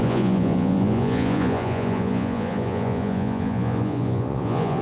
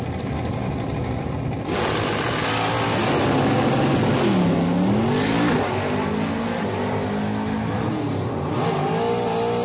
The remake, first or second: first